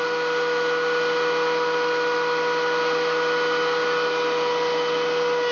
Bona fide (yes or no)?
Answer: yes